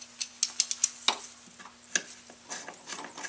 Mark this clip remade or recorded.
recorded